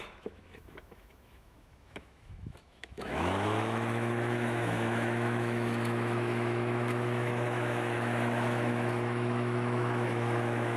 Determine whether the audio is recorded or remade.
remade